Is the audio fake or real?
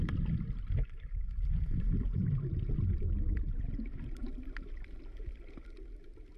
real